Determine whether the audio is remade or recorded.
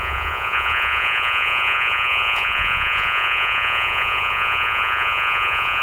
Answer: remade